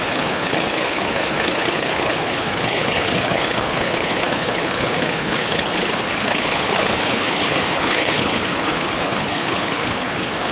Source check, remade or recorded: remade